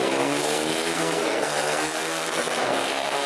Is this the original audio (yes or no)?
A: no